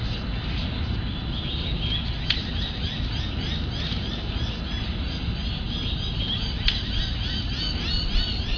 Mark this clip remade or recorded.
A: recorded